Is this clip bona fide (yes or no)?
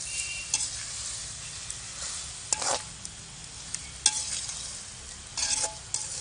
yes